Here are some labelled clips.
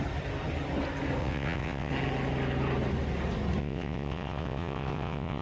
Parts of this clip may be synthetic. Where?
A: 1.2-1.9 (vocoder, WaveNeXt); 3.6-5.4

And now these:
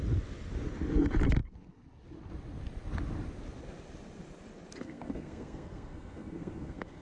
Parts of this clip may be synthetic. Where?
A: 4.8-7.0 (codec, SNAC)

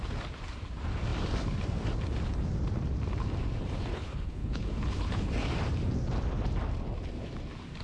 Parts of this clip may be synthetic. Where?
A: 3.9-5.3 (codec, HILCodec)

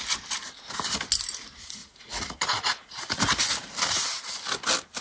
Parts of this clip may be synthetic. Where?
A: 1.8-3.2 (vocoder, Vocos)

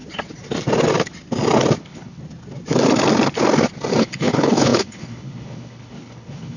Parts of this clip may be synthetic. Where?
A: 1.8-2.2 (codec, HILCodec); 4.0-6.6